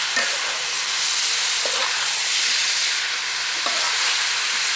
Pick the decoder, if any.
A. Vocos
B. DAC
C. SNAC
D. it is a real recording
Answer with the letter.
D